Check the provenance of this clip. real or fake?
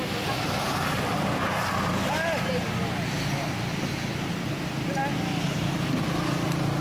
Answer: real